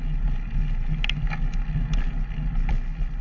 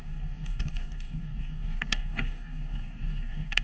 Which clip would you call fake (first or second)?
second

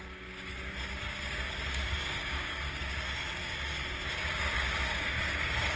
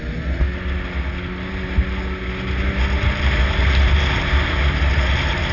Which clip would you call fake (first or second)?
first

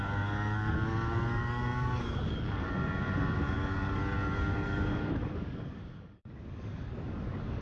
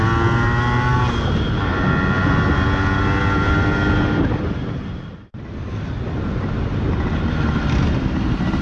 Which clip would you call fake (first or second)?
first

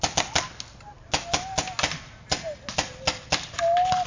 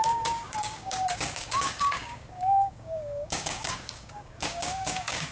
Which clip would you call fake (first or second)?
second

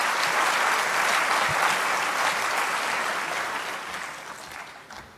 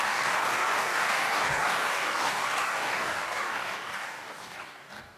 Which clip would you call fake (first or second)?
second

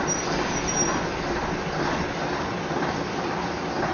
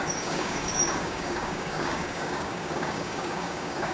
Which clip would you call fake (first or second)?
second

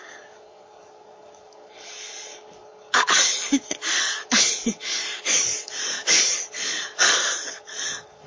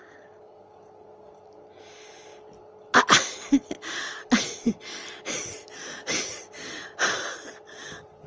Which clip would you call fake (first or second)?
first